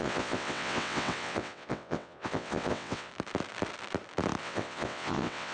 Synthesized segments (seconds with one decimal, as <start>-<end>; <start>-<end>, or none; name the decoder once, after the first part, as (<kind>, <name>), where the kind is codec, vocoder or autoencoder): 0.0-3.1 (vocoder, WaveNeXt); 4.4-5.5